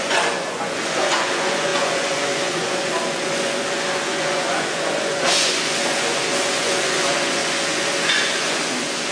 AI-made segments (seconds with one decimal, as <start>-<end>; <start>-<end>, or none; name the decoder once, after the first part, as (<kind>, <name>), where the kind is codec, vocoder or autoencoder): 0.0-9.1 (vocoder, Vocos)